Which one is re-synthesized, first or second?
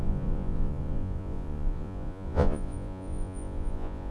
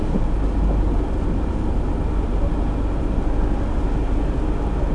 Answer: first